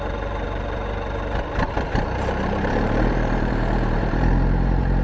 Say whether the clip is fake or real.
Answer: fake